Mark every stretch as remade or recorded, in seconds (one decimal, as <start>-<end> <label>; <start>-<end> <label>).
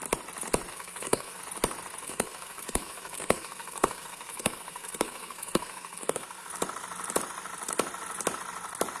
0.0-0.7 recorded; 0.7-1.4 remade; 1.4-2.0 recorded; 2.0-6.5 remade; 6.5-9.0 recorded